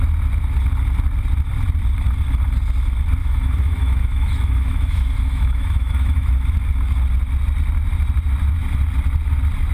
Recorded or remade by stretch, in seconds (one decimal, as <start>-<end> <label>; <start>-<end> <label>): 0.0-3.2 recorded; 3.2-6.3 remade; 6.3-9.7 recorded